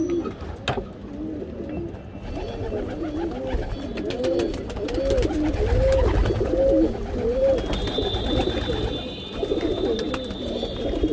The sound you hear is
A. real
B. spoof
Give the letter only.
A